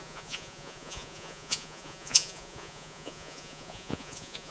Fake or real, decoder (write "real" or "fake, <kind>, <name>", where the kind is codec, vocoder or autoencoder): fake, vocoder, Vocos